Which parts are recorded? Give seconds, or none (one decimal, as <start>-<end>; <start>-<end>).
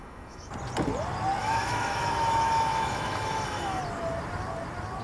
0.5-1.4; 3.8-5.0